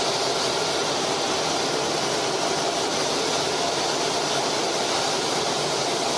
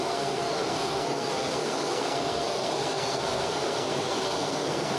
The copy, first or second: second